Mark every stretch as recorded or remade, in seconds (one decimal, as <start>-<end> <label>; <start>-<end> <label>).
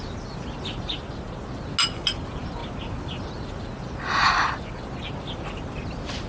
0.0-6.3 recorded